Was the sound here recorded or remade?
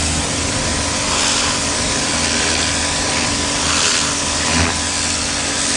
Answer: recorded